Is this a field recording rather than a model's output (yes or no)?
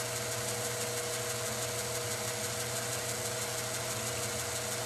yes